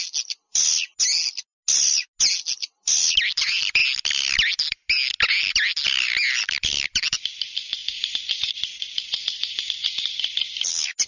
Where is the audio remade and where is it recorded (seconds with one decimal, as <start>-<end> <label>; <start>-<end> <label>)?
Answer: 0.0-7.7 recorded; 7.7-10.3 remade; 10.3-11.1 recorded